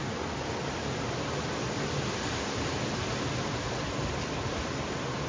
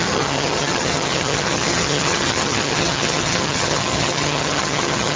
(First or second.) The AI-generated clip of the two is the second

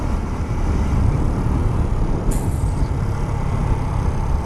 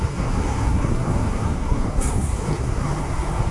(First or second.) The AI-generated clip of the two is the second